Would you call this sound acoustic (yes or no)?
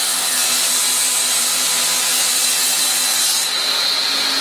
no